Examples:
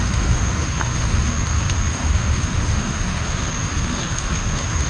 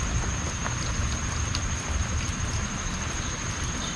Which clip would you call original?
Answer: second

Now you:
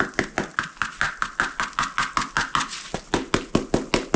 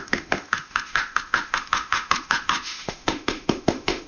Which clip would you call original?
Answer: first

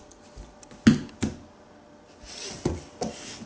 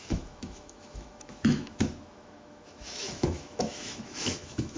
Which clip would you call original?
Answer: first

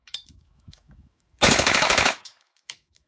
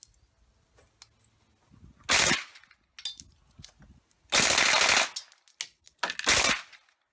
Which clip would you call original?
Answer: second